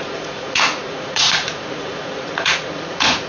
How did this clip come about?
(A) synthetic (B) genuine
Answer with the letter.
A